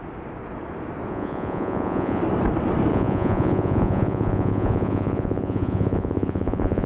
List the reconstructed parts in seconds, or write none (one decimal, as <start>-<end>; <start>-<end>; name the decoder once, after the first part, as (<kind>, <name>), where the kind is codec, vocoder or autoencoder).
1.1-2.2 (vocoder, Vocos); 2.9-6.9